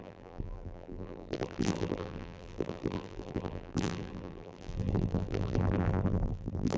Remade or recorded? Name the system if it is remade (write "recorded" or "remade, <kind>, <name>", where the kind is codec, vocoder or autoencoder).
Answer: remade, vocoder, BigVGAN v2